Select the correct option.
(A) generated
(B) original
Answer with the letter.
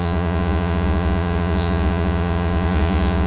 A